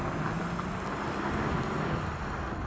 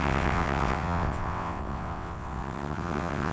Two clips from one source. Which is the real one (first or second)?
first